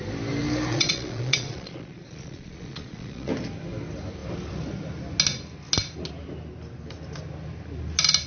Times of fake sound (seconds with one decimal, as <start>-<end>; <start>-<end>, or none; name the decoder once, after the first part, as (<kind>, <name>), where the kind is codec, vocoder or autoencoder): 0.7-3.3 (vocoder, Vocos)